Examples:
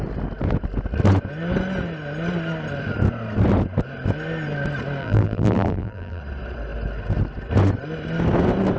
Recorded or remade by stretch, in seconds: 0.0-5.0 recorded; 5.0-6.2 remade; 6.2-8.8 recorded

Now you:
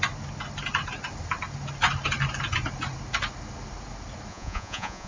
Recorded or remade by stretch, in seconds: 0.0-4.3 recorded; 4.3-5.1 remade

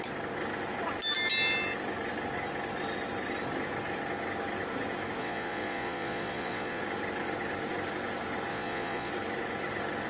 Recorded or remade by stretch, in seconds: 0.0-5.2 recorded; 5.2-6.8 remade; 6.8-8.5 recorded; 8.5-9.1 remade; 9.1-10.1 recorded

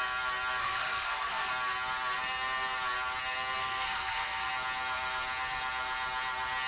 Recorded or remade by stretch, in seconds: 0.0-0.6 recorded; 0.6-1.5 remade; 1.5-3.6 recorded; 3.6-4.5 remade; 4.5-6.7 recorded

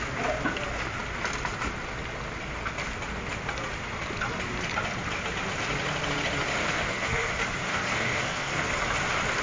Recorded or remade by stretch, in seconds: 0.0-6.6 recorded; 6.6-7.3 remade; 7.3-7.7 recorded; 7.7-8.7 remade; 8.7-9.4 recorded

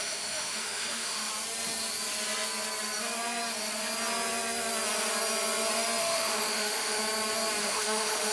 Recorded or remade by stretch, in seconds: 0.0-1.3 remade; 1.3-6.0 recorded; 6.0-7.0 remade; 7.0-7.6 recorded; 7.6-8.3 remade